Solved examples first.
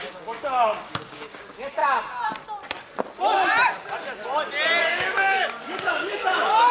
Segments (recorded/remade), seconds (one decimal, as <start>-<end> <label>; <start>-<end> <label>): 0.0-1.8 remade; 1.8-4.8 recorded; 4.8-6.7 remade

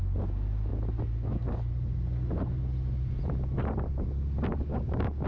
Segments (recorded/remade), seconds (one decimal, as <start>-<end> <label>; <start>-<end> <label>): 0.0-4.7 recorded; 4.7-5.3 remade

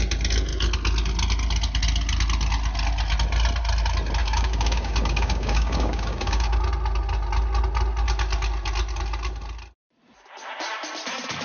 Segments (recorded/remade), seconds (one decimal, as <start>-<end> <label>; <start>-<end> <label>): 0.0-4.2 recorded; 4.2-6.6 remade; 6.6-11.4 recorded